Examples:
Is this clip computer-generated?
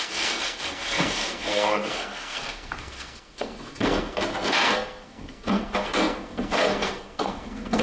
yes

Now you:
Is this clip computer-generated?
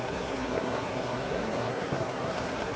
yes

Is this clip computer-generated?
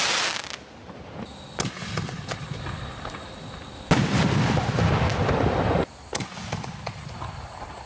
no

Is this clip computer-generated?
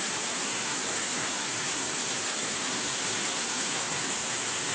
yes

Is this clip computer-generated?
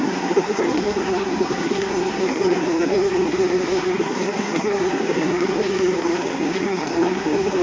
yes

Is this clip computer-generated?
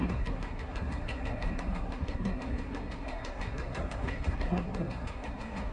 yes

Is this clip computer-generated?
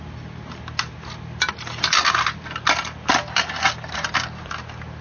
no